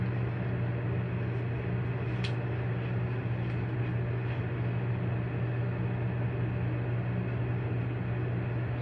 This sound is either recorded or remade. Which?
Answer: recorded